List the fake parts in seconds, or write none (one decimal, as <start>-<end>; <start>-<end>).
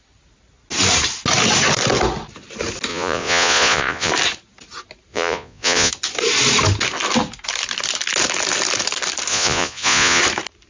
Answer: 2.9-4.1; 5.1-5.9; 9.3-10.2